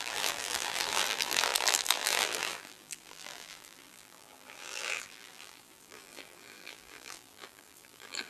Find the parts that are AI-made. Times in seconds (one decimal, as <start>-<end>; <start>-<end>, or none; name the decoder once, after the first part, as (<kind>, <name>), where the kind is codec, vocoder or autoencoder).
0.0-8.3 (vocoder, BigVGAN v2)